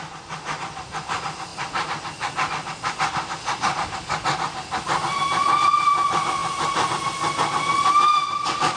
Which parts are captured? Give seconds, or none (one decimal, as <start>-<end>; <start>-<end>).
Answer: 0.0-8.8